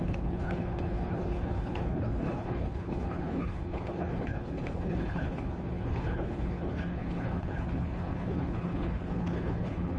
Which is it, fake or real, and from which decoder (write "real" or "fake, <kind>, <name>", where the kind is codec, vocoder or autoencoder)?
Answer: fake, codec, HILCodec